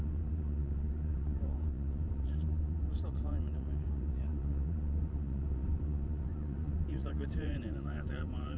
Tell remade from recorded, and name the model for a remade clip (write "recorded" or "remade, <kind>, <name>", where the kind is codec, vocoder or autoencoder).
remade, vocoder, Vocos